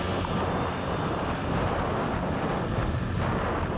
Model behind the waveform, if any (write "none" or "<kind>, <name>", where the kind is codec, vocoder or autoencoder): none